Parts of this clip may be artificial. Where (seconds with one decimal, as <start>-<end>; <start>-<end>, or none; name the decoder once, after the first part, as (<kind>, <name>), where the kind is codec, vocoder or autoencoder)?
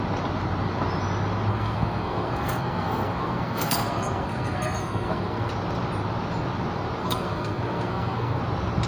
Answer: 1.5-5.5 (codec, SNAC); 7.0-8.4